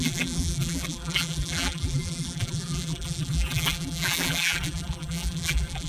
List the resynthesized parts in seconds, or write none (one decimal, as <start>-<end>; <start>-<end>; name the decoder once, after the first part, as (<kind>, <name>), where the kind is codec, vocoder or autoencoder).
0.0-5.9 (vocoder, BigVGAN v2)